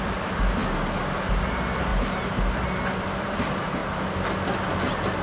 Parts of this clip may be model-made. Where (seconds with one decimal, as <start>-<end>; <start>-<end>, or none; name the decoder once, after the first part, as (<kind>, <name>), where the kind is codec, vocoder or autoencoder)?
0.0-0.6 (vocoder, BigVGAN v2); 1.5-1.9; 3.0-3.8